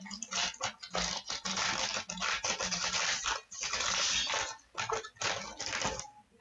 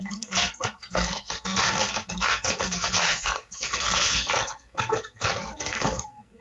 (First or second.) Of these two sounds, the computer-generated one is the second